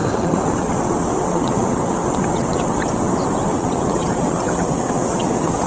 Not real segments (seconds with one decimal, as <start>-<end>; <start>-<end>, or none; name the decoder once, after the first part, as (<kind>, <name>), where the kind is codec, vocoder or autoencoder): 0.0-3.1 (vocoder, WaveNeXt); 3.5-5.7